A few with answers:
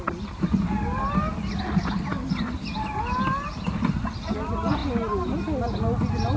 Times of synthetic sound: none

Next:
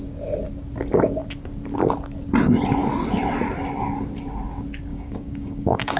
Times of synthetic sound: 4.9-6.0 (codec, DAC)